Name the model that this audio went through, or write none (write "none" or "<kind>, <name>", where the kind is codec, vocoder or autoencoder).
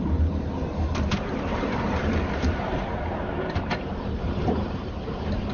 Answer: vocoder, BigVGAN v2